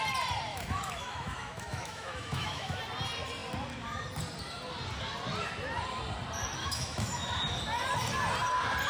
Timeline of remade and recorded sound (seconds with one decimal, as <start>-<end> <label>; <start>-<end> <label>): 0.0-0.5 recorded; 0.5-2.8 remade; 2.8-6.6 recorded; 6.6-7.3 remade; 7.3-8.9 recorded